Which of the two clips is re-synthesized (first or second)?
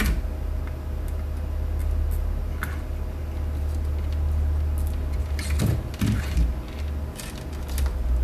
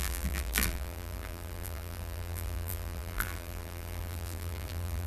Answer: second